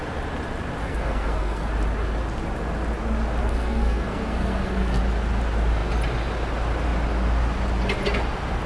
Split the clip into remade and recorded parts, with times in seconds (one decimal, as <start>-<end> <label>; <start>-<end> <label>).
0.0-0.8 recorded; 0.8-1.7 remade; 1.7-3.4 recorded; 3.4-5.0 remade; 5.0-8.7 recorded